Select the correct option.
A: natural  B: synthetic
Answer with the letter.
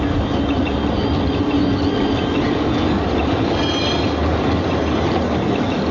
A